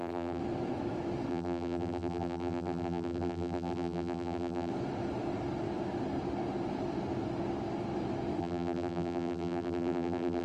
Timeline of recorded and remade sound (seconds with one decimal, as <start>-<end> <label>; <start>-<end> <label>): 0.0-0.4 remade; 0.4-1.3 recorded; 1.3-4.7 remade; 4.7-8.4 recorded; 8.4-10.4 remade